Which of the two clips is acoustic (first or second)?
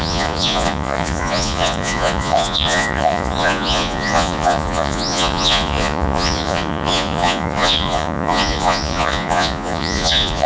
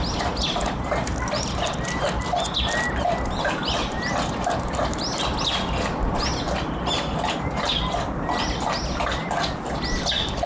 second